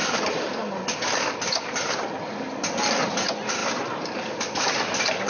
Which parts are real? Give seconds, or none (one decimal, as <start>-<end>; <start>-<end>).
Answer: 3.2-3.6